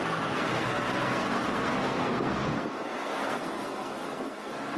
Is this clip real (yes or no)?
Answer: no